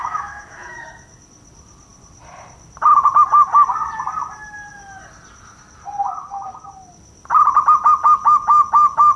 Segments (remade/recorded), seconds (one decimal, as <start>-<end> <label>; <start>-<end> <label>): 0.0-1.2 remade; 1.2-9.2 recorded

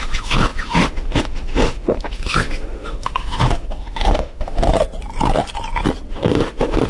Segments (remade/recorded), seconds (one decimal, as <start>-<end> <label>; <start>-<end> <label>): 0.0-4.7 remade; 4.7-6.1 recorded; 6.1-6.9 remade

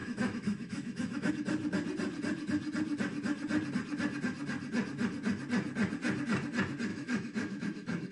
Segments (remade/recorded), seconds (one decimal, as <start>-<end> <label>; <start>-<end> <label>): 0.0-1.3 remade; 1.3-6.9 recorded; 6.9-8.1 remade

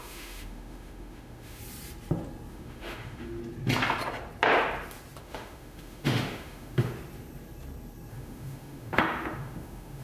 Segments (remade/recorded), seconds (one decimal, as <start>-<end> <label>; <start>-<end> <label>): 0.0-1.6 remade; 1.6-2.5 recorded; 2.5-3.4 remade; 3.4-5.2 recorded; 5.2-6.9 remade; 6.9-8.1 recorded; 8.1-10.0 remade

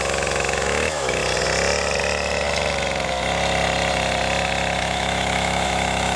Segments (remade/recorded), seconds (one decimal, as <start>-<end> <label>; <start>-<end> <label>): 0.0-1.2 remade; 1.2-4.8 recorded; 4.8-6.2 remade

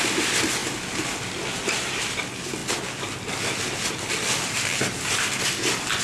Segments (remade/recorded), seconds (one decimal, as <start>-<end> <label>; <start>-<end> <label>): 0.0-6.0 recorded

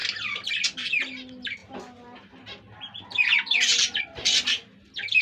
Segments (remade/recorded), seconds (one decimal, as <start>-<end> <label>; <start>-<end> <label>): 0.0-5.2 recorded

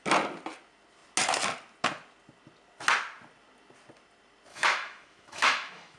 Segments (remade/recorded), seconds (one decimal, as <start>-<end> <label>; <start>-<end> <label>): 0.0-4.5 recorded; 4.5-6.0 remade